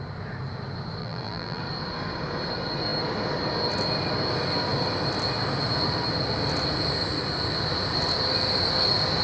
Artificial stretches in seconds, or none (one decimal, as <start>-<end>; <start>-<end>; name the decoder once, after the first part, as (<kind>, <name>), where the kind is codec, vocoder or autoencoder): 1.0-1.6 (vocoder, BigVGAN v2)